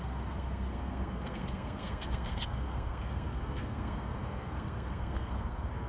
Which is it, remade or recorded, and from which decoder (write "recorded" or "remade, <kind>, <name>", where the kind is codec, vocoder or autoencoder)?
remade, codec, SNAC